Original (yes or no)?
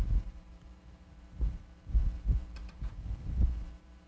no